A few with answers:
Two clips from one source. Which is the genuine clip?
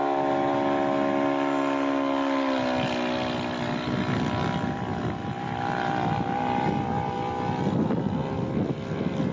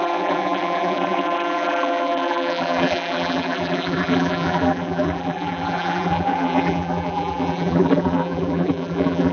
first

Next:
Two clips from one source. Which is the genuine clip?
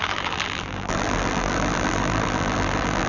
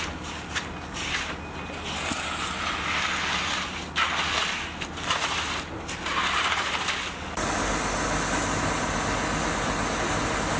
second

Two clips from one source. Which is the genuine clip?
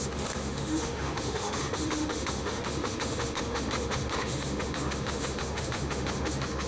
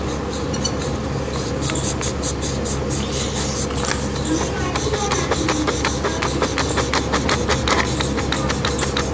second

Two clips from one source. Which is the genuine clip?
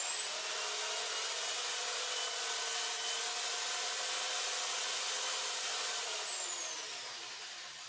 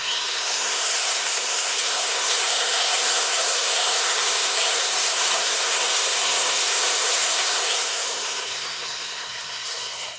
first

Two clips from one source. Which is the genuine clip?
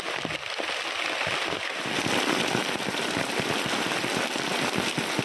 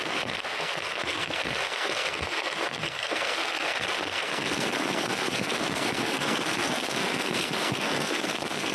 first